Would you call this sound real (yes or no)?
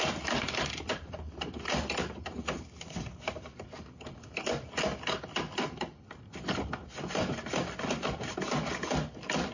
yes